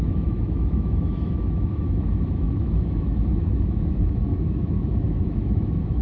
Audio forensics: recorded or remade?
remade